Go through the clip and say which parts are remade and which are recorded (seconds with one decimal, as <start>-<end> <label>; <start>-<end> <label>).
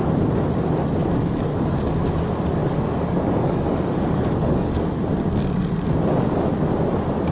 0.0-2.6 recorded; 2.6-5.0 remade; 5.0-7.3 recorded